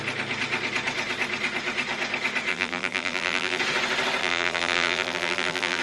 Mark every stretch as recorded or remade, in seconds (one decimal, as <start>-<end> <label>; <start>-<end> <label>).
0.0-2.5 recorded; 2.5-3.6 remade; 3.6-4.2 recorded; 4.2-5.8 remade